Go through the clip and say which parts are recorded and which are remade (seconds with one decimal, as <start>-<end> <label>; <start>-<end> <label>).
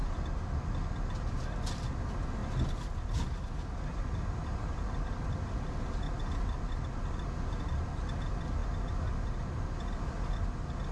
0.0-10.9 recorded